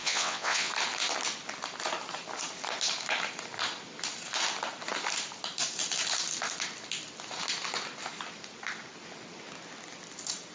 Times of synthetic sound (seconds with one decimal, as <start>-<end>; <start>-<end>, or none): 0.0-0.7